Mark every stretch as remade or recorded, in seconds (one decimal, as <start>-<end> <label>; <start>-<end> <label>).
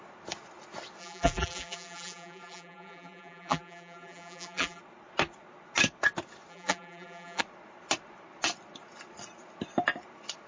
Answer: 0.0-1.0 recorded; 1.0-4.8 remade; 4.8-6.5 recorded; 6.5-7.4 remade; 7.4-10.5 recorded